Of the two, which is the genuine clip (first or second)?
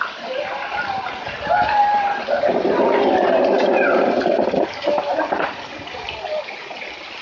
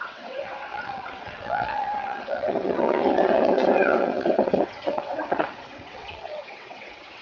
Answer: first